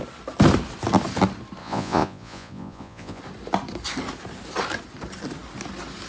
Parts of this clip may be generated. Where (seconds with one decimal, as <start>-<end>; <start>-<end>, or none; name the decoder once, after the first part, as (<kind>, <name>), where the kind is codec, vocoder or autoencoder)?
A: 1.6-3.2 (vocoder, Vocos)